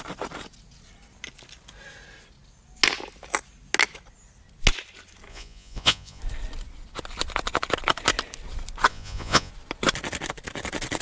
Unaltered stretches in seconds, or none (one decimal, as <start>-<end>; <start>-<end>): 0.0-5.3; 6.2-8.9; 9.5-11.0